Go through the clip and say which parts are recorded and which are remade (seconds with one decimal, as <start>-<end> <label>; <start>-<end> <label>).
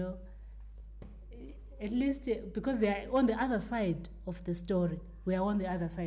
0.0-6.1 recorded